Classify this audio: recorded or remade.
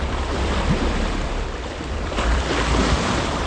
remade